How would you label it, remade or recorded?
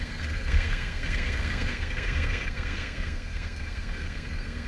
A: remade